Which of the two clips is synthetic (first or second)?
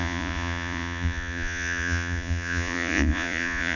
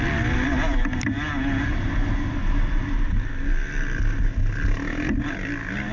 first